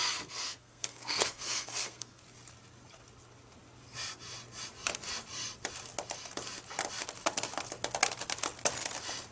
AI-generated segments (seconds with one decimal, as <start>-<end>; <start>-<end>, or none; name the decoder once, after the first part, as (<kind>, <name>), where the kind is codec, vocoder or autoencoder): 0.0-2.2 (codec, SNAC)